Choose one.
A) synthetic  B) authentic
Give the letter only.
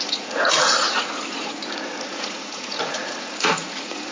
A